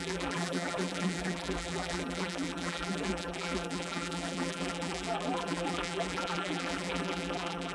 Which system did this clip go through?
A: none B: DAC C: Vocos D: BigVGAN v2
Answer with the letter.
D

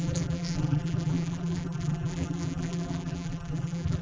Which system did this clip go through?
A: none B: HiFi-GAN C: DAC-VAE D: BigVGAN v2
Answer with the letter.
D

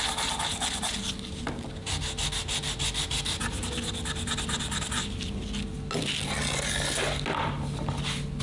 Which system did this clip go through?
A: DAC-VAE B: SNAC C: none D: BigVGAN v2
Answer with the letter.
C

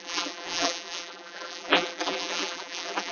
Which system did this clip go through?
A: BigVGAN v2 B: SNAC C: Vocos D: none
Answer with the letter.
A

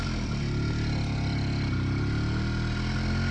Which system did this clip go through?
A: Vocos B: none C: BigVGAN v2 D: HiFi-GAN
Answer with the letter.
B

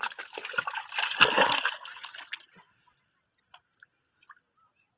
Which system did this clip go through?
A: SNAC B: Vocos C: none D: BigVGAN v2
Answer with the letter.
C